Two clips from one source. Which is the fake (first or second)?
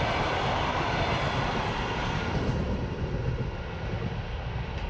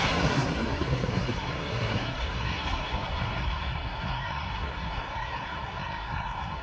second